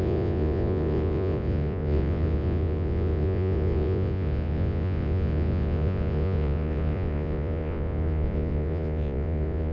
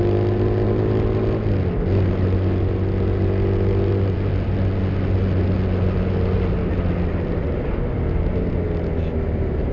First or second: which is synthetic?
first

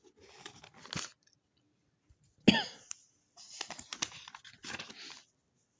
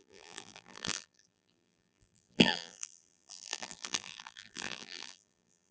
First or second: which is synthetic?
second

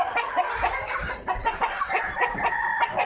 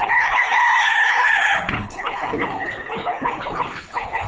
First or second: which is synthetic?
second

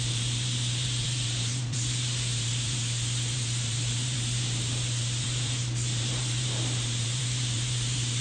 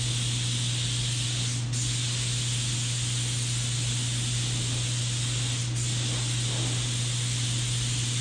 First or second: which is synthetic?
first